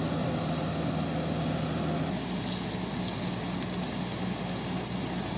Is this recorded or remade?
recorded